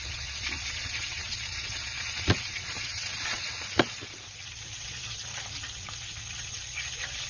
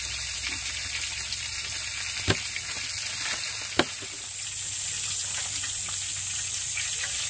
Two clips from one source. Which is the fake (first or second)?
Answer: first